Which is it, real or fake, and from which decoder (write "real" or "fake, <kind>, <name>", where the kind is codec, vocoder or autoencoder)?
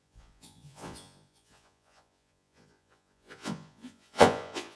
fake, vocoder, Vocos